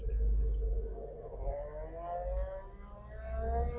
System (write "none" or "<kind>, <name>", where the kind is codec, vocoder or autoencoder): none